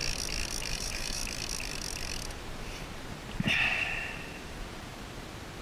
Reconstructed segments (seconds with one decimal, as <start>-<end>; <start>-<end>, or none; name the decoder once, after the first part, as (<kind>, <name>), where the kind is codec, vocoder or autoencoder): 0.7-1.2 (vocoder, BigVGAN v2); 3.3-4.9